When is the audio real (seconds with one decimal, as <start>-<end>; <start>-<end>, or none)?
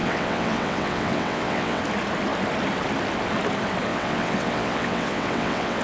1.8-3.9